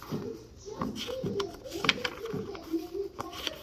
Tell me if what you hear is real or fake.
real